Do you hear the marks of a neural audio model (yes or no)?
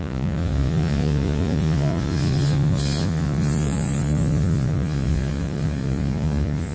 yes